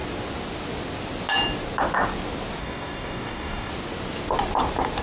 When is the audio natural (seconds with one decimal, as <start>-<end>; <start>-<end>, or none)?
0.0-2.6; 3.7-5.0